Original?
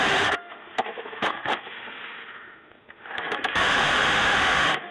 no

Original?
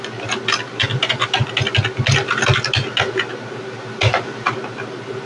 yes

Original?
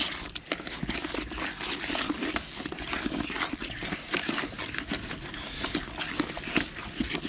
yes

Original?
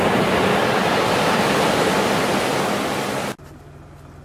yes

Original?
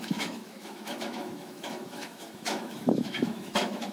no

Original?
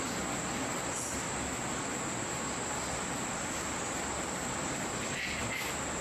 yes